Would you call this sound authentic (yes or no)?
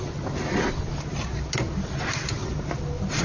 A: yes